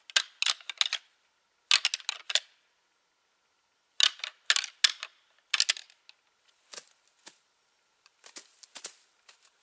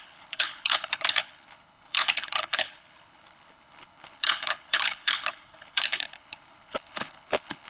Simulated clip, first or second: second